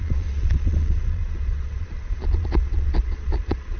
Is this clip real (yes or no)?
no